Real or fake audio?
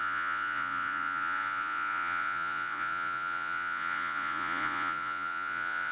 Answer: fake